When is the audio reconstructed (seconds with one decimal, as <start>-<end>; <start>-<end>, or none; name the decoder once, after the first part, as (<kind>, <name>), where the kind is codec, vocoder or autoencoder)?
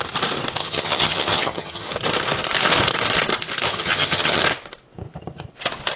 0.6-1.9 (vocoder, HiFi-GAN); 3.7-4.4